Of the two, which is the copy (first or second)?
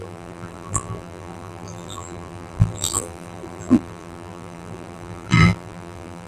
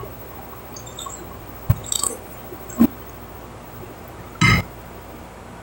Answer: first